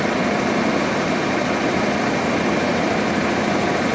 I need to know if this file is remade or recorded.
recorded